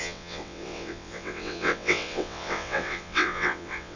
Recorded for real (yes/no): no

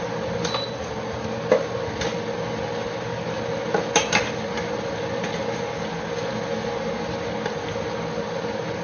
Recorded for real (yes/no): yes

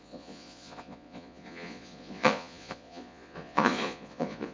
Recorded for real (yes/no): no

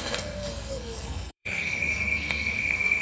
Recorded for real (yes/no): no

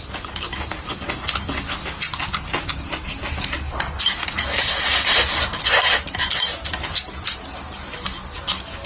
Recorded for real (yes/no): yes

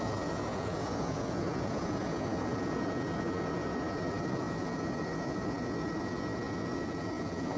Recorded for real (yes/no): no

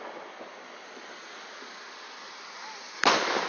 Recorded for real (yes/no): yes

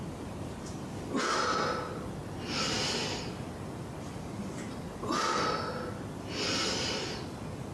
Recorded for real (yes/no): yes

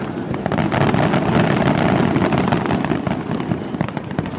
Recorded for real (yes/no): yes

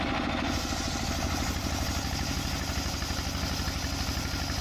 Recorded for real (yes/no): yes